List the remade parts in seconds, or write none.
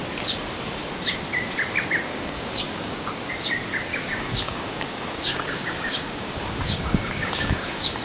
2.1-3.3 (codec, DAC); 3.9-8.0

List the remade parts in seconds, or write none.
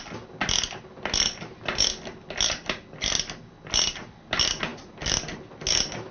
none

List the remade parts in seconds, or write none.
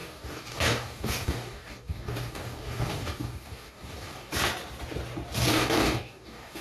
0.0-4.3 (codec, DAC); 5.5-6.6